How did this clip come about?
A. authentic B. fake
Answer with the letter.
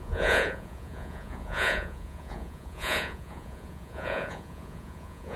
B